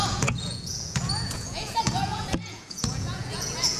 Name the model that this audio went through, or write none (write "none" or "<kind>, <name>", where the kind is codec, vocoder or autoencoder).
vocoder, Vocos